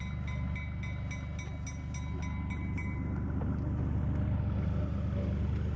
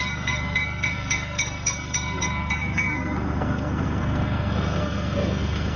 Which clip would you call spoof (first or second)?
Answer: second